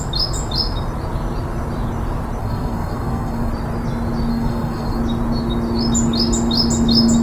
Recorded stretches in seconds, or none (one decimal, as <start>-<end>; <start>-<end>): 0.0-2.4; 3.5-4.3; 5.0-7.2